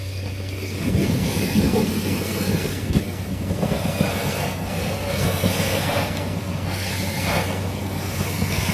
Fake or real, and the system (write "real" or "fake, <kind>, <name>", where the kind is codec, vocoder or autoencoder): fake, codec, SNAC